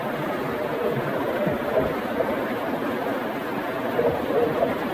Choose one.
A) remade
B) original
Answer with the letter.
B